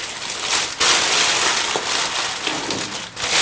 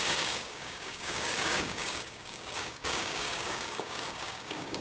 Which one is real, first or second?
first